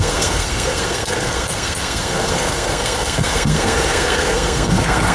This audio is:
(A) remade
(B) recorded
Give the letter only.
A